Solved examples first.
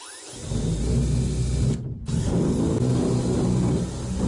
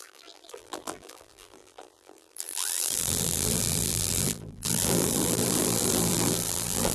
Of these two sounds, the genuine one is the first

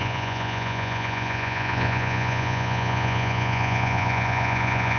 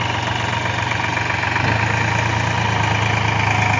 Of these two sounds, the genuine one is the second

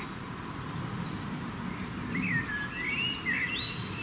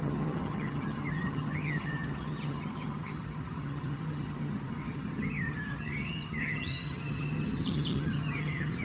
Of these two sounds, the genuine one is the first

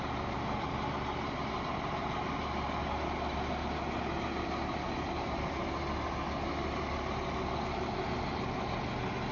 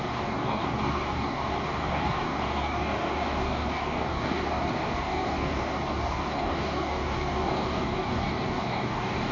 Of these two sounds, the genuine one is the first